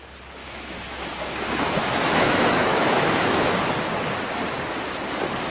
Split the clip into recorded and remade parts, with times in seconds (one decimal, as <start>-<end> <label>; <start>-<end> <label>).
0.0-0.4 recorded; 0.4-3.7 remade; 3.7-5.5 recorded